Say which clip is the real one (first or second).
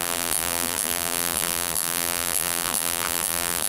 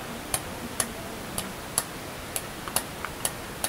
second